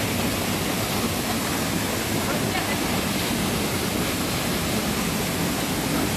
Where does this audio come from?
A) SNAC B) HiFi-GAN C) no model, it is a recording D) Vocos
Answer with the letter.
C